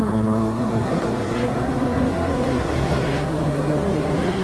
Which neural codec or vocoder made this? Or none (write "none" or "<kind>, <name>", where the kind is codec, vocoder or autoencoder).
codec, SNAC